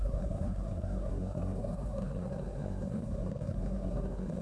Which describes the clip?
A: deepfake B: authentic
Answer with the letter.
A